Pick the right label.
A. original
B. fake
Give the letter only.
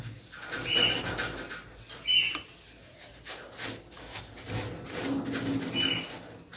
A